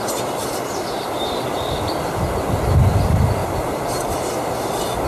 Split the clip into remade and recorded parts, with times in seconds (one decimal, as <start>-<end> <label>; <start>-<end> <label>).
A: 0.0-3.4 recorded; 3.4-5.1 remade